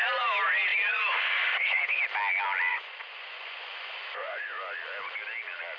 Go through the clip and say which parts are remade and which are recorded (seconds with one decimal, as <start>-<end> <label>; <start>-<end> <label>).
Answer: 0.0-0.7 recorded; 0.7-2.0 remade; 2.0-2.7 recorded; 2.7-4.6 remade; 4.6-5.8 recorded